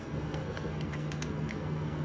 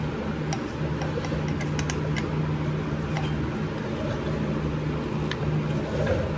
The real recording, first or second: second